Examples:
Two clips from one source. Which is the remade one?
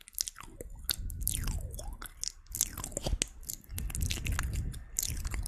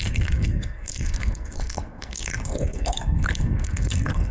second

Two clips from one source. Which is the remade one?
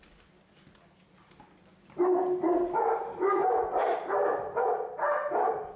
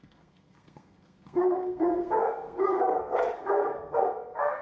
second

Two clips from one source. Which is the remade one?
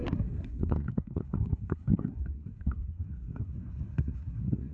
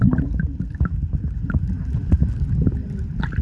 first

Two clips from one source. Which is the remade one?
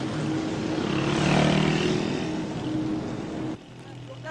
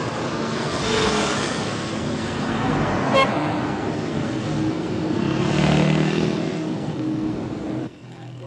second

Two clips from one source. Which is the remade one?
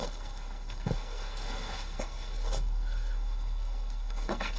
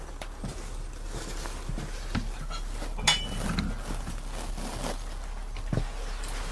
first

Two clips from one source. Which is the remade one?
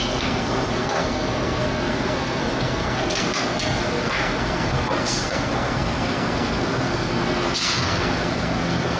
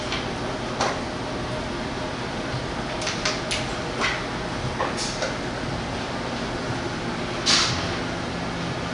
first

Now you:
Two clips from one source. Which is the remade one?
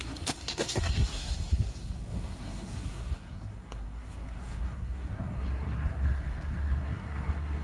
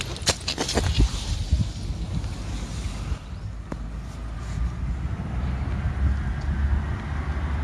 first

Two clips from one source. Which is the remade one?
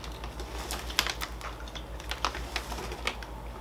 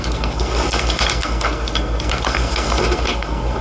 second